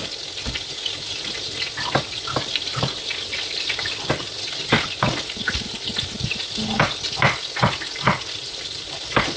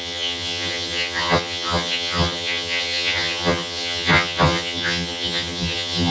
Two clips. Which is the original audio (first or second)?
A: first